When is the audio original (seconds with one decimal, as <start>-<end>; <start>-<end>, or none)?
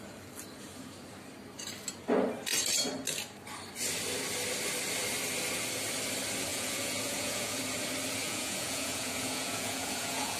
0.0-6.5; 7.6-8.2